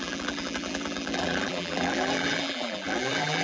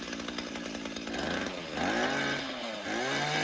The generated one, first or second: first